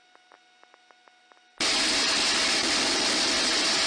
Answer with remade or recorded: recorded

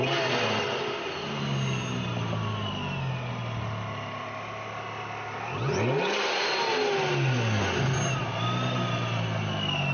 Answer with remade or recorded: recorded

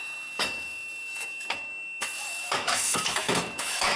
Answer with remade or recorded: remade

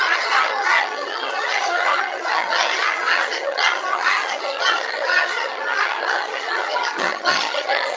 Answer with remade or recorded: remade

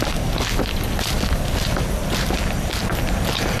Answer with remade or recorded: recorded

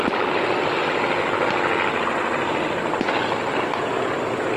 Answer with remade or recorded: recorded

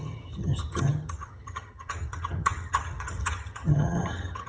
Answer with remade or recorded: remade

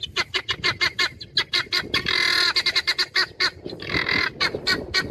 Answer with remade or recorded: recorded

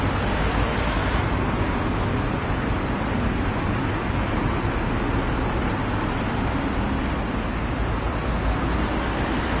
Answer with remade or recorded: recorded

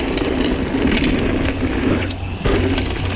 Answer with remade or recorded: recorded